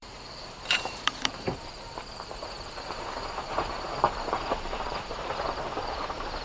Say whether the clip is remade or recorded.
remade